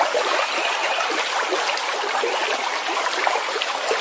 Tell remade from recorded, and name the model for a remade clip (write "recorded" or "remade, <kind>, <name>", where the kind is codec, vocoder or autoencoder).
recorded